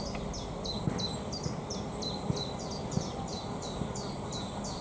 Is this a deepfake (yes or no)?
no